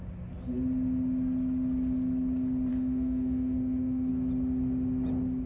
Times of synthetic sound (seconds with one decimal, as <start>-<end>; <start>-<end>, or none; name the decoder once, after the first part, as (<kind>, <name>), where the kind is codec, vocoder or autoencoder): 2.7-4.1 (autoencoder, DAC-VAE)